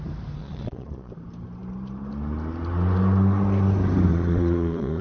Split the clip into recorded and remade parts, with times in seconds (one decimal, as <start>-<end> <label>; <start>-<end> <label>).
0.0-0.4 recorded; 0.4-1.1 remade; 1.1-4.1 recorded; 4.1-5.0 remade